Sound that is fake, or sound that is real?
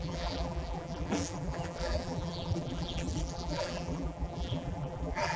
fake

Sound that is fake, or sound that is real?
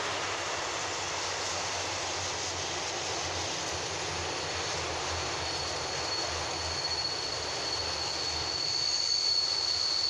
real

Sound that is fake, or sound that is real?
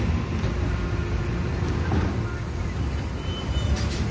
real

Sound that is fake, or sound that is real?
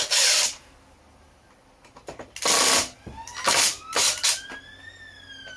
real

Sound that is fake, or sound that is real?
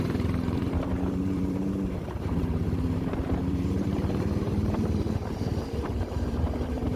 fake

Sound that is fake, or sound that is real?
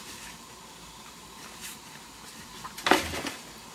fake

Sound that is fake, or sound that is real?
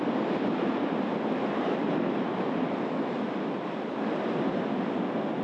fake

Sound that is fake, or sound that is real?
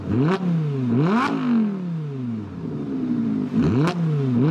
real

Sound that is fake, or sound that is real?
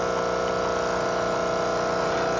fake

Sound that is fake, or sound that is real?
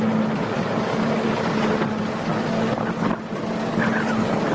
real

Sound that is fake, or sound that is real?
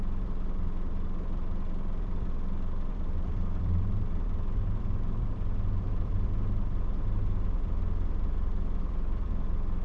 fake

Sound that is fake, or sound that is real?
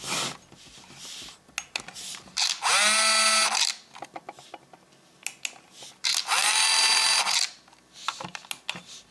real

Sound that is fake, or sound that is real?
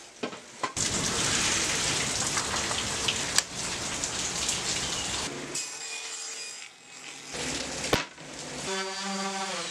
real